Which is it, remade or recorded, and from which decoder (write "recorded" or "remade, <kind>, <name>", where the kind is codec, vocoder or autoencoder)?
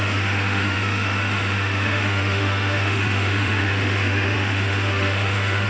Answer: remade, autoencoder, DAC-VAE